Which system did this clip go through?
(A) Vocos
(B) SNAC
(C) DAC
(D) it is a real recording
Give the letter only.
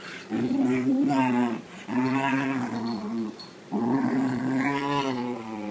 A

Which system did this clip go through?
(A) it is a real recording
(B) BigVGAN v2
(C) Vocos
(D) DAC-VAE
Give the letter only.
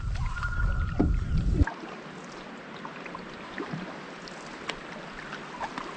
A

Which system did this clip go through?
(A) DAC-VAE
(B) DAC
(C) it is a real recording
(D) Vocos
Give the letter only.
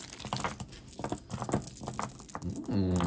C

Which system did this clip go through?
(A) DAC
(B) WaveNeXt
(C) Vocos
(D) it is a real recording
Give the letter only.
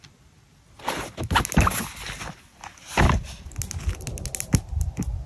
D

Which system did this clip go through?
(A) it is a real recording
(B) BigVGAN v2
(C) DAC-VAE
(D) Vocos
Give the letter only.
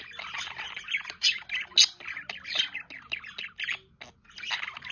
A